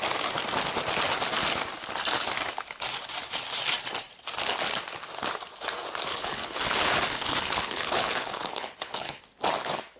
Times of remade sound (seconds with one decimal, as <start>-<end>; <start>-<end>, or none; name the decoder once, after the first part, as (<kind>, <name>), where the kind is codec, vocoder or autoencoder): 6.1-9.2 (codec, HILCodec)